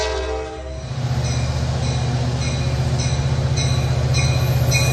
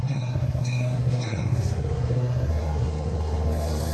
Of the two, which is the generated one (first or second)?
second